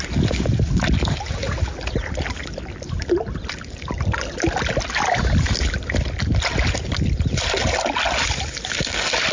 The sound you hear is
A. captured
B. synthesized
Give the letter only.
A